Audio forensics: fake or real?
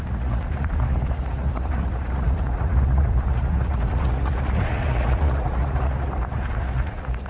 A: fake